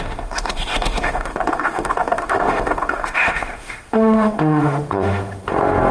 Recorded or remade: remade